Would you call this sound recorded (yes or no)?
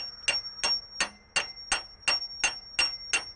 yes